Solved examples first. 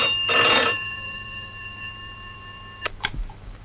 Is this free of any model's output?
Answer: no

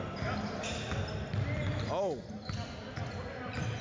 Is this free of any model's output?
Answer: yes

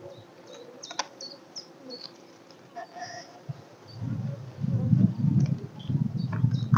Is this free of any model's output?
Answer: yes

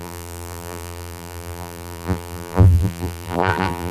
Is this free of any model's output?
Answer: no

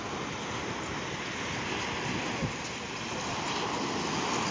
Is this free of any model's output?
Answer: yes